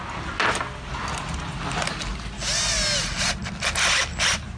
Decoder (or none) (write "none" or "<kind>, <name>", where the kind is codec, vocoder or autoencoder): none